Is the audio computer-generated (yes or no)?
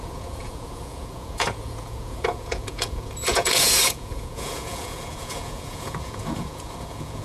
yes